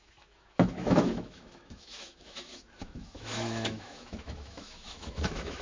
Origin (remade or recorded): remade